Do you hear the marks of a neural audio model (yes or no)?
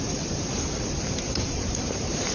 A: yes